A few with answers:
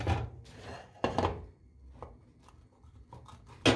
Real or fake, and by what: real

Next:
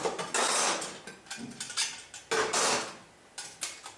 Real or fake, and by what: real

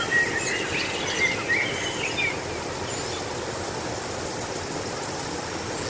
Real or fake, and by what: real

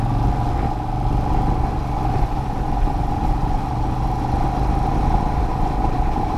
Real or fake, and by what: real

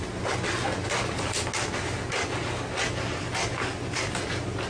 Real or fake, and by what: real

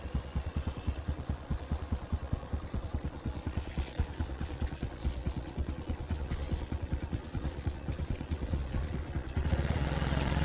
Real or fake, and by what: fake, vocoder, Vocos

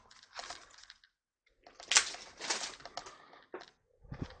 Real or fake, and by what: real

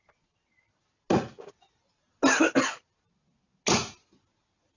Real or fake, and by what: real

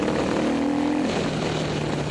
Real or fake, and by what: real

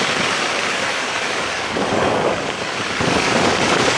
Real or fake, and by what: fake, codec, DAC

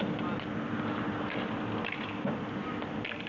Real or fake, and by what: real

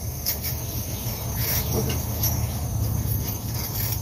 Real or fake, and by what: fake, codec, DAC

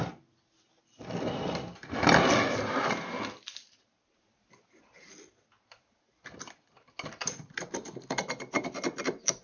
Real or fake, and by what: real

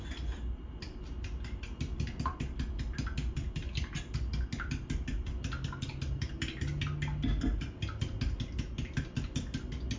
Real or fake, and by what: real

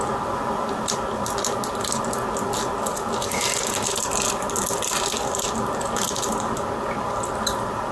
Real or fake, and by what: real